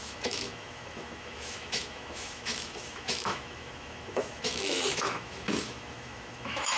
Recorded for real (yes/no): no